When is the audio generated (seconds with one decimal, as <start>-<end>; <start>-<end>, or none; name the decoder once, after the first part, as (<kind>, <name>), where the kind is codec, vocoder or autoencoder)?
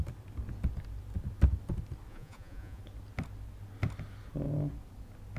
2.1-2.8 (vocoder, Vocos)